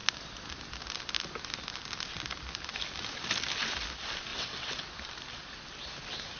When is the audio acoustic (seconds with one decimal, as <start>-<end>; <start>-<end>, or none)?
0.0-4.3; 4.8-6.4